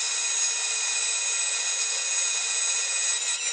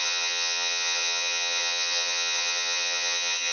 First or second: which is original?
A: first